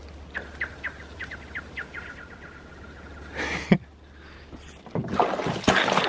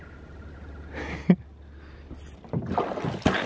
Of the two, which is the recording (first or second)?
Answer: second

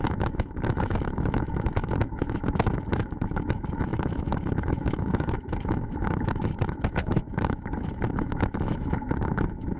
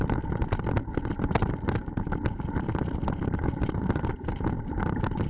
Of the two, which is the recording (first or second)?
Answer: second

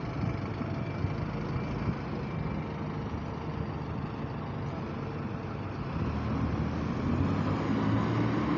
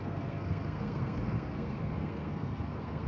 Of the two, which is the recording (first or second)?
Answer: first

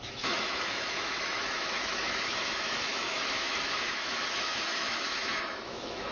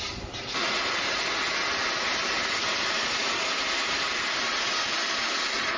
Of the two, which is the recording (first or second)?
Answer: second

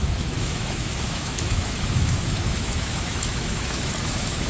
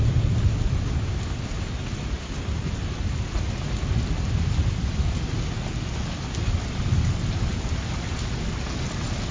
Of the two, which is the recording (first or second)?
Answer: second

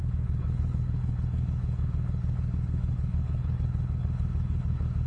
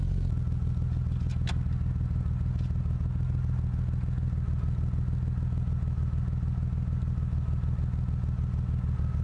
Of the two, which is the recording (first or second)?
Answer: second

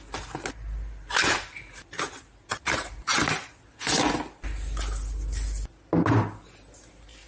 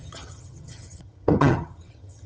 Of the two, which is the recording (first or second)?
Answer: first